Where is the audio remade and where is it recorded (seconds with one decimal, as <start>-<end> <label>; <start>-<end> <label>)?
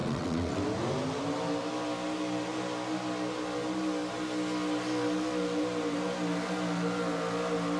0.0-0.6 remade; 0.6-7.8 recorded